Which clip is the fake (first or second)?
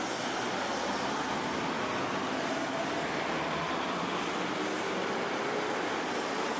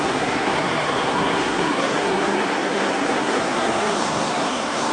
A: second